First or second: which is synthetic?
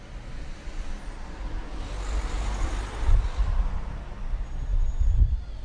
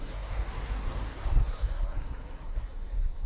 second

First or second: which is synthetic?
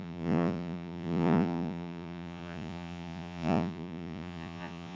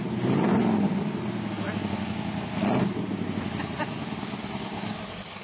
first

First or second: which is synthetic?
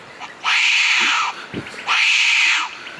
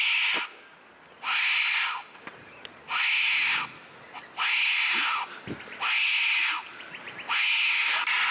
first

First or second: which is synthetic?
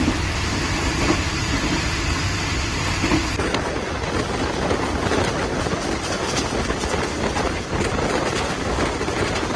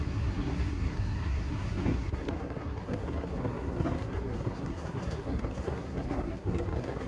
second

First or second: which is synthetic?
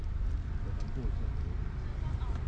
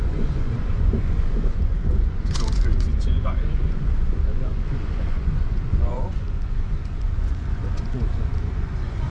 second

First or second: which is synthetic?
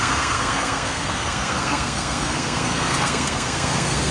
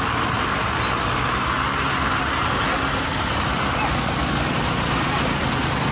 first